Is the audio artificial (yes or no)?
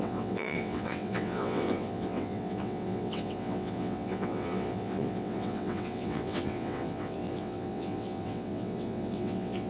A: yes